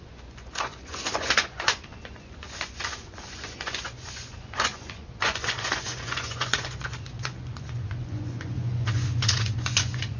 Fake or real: fake